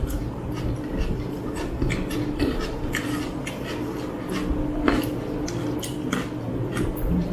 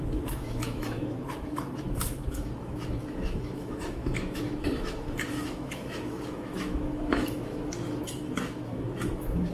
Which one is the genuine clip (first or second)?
first